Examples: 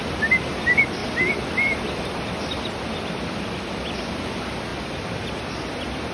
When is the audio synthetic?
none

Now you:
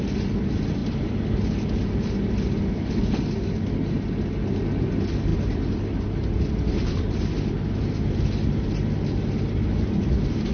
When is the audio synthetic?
none

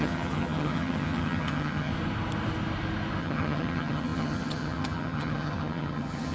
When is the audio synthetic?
0.0-1.9 (vocoder, HiFi-GAN); 3.2-6.3

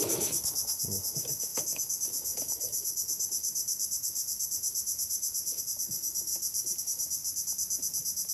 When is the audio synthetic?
0.0-6.3 (autoencoder, DAC-VAE); 6.8-7.2